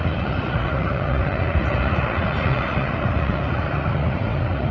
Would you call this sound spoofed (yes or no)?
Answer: yes